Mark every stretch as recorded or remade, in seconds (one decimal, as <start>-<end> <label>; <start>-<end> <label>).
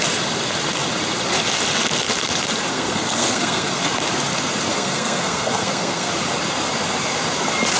0.0-2.7 recorded; 2.7-3.8 remade; 3.8-4.7 recorded; 4.7-6.1 remade; 6.1-7.8 recorded